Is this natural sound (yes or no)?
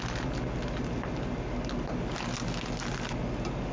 yes